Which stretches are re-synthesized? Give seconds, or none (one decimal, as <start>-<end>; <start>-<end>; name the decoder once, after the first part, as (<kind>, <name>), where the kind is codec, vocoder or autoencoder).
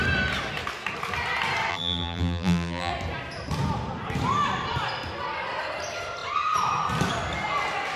1.7-2.9 (vocoder, BigVGAN v2)